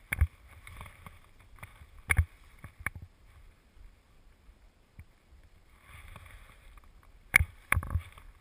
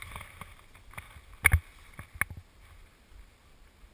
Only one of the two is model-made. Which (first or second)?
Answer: first